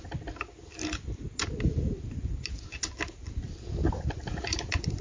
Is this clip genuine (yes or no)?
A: yes